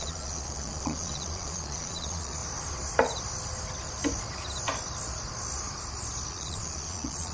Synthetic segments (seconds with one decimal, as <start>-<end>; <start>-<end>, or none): 0.0-2.4; 6.3-7.3